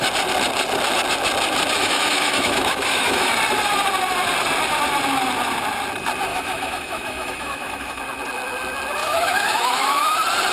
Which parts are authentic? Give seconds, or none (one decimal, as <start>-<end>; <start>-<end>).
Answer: 0.0-1.8; 3.3-6.3; 8.0-9.0; 10.0-10.5